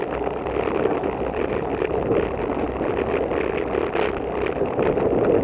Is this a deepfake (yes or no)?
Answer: no